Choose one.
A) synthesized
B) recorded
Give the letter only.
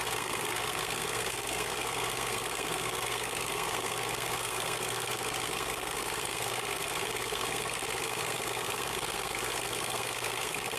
A